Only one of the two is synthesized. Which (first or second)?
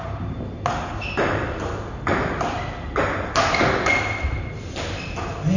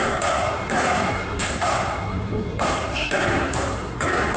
second